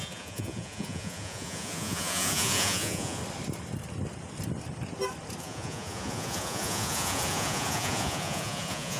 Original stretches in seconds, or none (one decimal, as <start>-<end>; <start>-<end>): 3.2-5.4